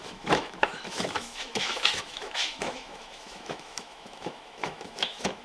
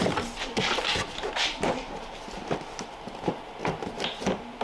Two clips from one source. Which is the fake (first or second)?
first